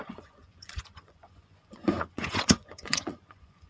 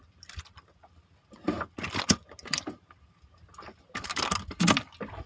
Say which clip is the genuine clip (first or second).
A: second